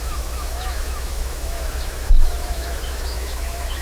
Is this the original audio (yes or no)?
no